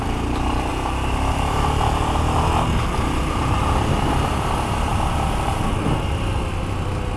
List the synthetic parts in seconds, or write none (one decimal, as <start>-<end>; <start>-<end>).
none